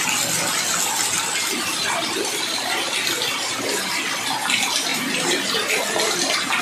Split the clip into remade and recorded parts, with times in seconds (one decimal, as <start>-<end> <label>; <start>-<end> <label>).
0.0-1.4 recorded; 1.4-4.1 remade; 4.1-4.9 recorded; 4.9-6.6 remade